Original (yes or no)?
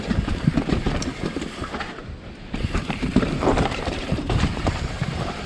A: no